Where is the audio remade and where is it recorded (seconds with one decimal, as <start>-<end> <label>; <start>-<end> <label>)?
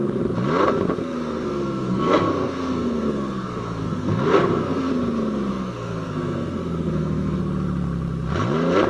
0.0-1.0 recorded; 1.0-4.9 remade; 4.9-5.5 recorded; 5.5-7.4 remade; 7.4-8.9 recorded